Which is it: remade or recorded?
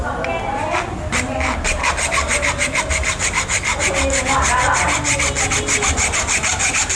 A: recorded